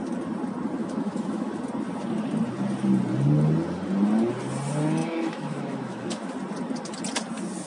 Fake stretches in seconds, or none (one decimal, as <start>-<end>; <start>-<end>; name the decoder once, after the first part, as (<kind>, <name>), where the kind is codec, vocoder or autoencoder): 0.8-1.6 (autoencoder, DAC-VAE); 5.0-6.3